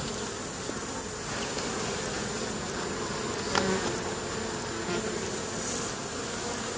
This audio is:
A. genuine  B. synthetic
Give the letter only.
A